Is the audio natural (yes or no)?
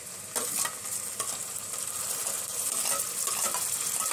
yes